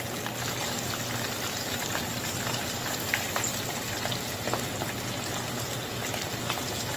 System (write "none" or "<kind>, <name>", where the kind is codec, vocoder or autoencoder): none